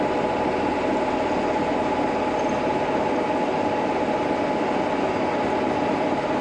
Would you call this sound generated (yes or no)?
no